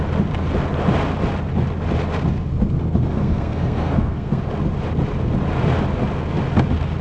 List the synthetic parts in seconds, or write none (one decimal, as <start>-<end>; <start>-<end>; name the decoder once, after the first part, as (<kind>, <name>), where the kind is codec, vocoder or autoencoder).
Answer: 2.5-4.4 (codec, SNAC)